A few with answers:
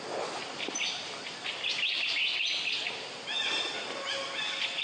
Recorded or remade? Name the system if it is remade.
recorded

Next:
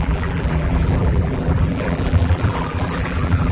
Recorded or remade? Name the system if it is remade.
remade, vocoder, BigVGAN v2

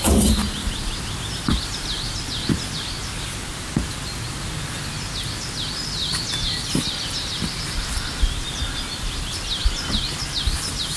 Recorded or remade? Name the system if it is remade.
recorded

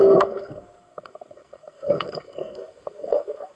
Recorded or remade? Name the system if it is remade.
remade, codec, SNAC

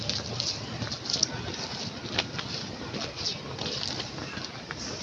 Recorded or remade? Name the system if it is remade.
recorded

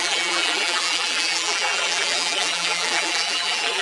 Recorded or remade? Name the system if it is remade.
remade, vocoder, BigVGAN v2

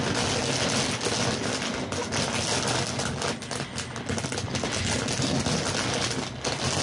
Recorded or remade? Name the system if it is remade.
recorded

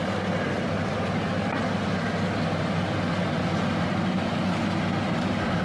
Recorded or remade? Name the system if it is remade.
recorded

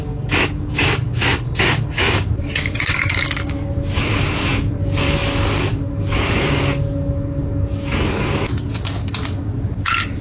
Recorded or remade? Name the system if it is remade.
remade, codec, DAC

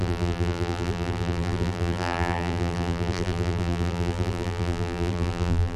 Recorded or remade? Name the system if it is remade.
remade, vocoder, BigVGAN v2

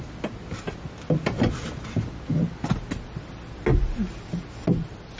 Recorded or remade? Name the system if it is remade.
recorded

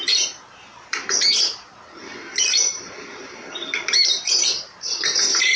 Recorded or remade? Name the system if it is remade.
remade, vocoder, BigVGAN v2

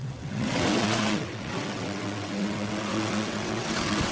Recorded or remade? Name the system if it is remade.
remade, vocoder, WaveNeXt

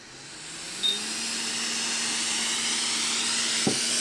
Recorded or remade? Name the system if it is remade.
recorded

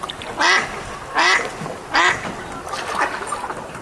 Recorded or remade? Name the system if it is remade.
recorded